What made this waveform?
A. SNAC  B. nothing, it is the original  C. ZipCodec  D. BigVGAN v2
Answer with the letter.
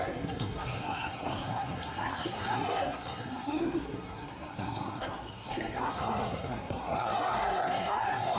A